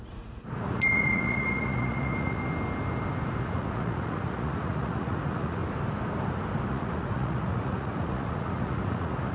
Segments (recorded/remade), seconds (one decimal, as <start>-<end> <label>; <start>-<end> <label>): 0.0-2.4 remade; 2.4-3.4 recorded; 3.4-5.6 remade; 5.6-6.7 recorded; 6.7-9.3 remade